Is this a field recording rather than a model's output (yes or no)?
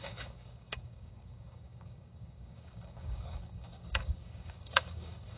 no